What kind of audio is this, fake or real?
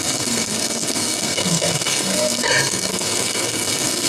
fake